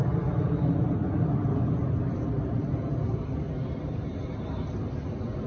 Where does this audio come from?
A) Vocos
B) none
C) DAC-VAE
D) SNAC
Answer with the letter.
B